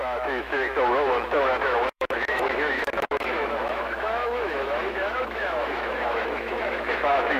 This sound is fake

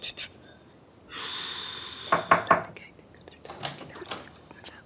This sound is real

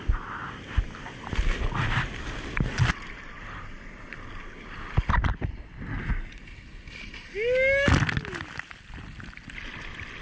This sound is real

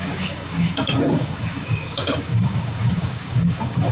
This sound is fake